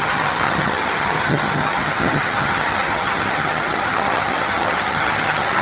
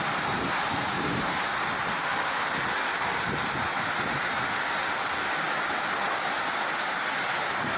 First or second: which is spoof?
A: first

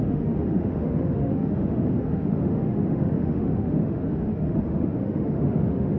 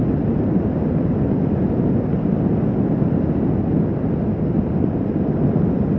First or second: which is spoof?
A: first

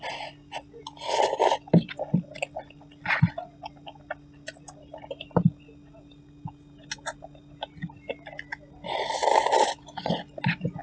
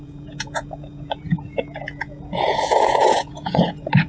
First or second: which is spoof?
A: second